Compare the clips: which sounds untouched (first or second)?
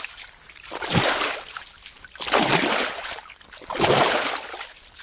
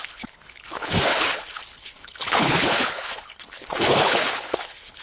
first